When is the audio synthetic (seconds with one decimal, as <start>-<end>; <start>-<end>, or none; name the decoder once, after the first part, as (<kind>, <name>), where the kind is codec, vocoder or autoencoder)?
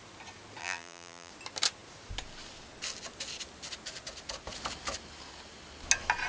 0.6-1.3 (vocoder, BigVGAN v2)